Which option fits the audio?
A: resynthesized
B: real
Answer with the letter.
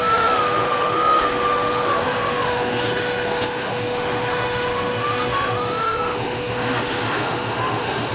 A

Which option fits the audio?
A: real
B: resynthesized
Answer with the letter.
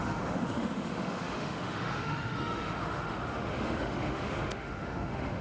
B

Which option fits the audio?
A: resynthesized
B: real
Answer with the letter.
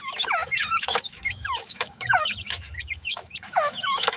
A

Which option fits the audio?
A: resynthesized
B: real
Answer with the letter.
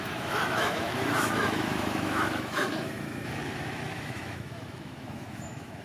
A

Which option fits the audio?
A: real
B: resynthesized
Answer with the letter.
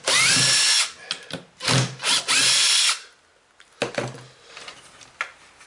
A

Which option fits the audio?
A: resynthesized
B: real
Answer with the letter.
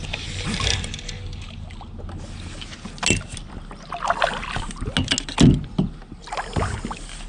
B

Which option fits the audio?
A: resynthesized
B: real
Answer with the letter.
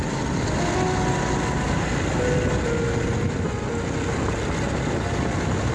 B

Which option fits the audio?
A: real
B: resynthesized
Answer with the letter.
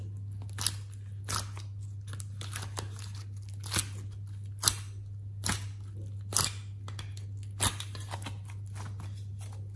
A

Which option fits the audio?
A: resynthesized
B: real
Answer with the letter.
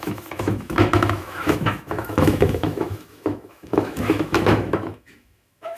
A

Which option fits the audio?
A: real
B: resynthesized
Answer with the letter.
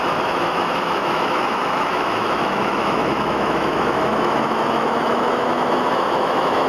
B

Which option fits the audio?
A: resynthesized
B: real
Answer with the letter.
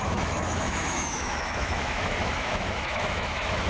A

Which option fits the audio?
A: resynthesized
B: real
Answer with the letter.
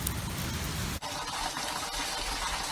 B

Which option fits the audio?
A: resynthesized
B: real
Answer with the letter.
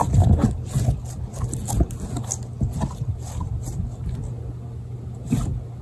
B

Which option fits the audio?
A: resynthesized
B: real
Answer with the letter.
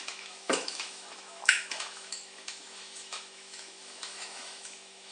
A